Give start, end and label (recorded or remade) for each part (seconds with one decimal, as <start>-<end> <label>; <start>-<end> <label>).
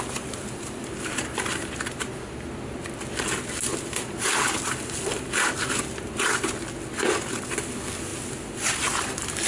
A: 0.0-8.1 recorded; 8.1-9.0 remade; 9.0-9.5 recorded